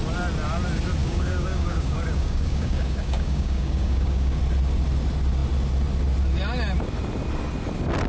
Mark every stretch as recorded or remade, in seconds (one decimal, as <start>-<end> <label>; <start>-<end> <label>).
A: 0.0-1.0 recorded; 1.0-4.4 remade; 4.4-8.1 recorded